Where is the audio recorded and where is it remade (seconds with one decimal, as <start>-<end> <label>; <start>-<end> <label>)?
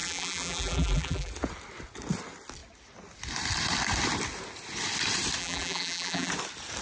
0.0-1.3 remade; 1.3-5.4 recorded; 5.4-6.3 remade; 6.3-6.8 recorded